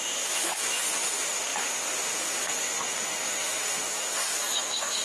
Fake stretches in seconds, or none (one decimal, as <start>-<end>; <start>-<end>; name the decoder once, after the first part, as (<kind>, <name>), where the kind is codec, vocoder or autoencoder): 0.0-5.0 (autoencoder, DAC-VAE)